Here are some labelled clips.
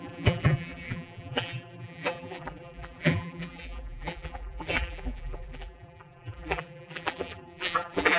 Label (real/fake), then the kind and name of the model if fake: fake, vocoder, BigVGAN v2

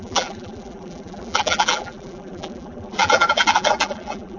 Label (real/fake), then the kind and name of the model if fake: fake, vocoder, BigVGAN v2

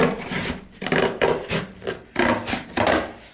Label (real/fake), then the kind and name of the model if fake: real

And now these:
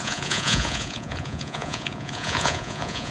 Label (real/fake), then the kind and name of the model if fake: fake, vocoder, Vocos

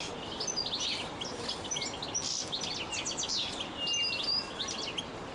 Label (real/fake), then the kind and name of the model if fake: real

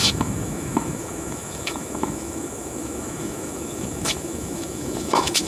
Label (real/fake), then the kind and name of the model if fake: fake, autoencoder, DAC-VAE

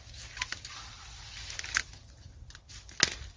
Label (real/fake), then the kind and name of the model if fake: real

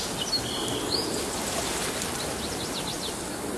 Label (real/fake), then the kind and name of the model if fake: real